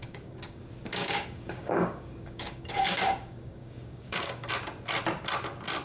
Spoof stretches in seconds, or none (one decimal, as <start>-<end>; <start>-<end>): 0.0-0.6; 1.0-4.5